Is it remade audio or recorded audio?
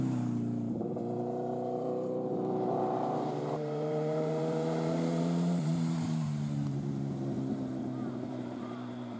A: remade